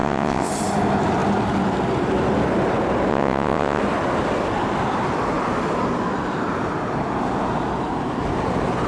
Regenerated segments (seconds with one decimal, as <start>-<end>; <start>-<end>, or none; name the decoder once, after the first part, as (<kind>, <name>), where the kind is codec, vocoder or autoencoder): 0.0-0.5 (vocoder, WaveNeXt); 3.1-3.8